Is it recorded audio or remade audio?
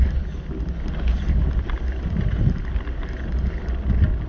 recorded